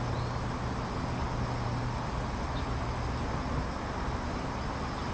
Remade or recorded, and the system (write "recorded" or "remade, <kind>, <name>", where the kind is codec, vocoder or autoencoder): recorded